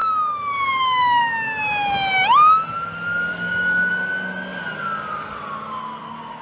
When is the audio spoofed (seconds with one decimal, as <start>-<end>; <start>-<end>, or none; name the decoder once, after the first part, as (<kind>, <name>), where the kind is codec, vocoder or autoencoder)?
0.0-1.2 (codec, DAC); 3.3-3.9